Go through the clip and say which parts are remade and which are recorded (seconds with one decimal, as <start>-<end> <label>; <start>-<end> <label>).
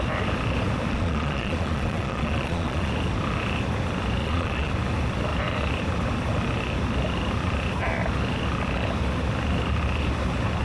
0.0-0.9 recorded; 0.9-2.9 remade; 2.9-4.2 recorded; 4.2-4.7 remade; 4.7-10.6 recorded